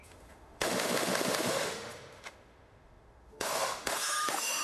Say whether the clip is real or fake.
fake